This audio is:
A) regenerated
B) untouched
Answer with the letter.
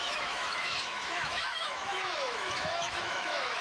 A